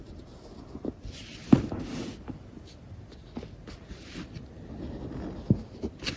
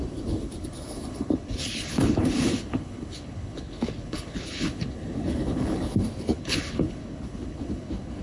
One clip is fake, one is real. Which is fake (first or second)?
second